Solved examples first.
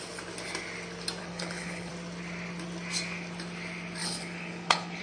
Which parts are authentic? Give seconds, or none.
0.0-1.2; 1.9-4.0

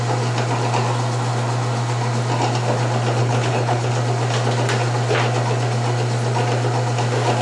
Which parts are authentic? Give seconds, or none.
0.0-3.2; 3.9-7.4

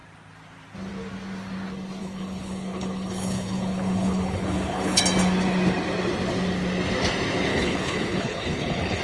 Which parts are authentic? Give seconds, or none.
0.0-2.0; 5.0-7.5

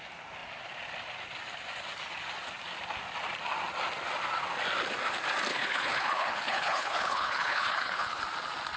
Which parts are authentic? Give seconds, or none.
0.0-5.5; 8.2-8.8

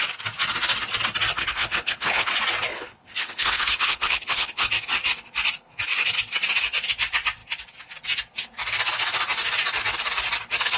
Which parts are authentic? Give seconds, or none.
0.0-1.4; 2.3-2.7; 4.7-10.8

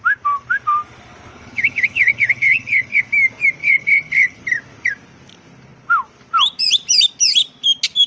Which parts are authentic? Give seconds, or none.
0.0-1.3; 3.0-3.6; 4.4-8.1